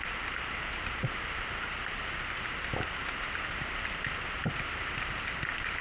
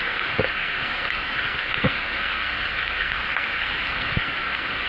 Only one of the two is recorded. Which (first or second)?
first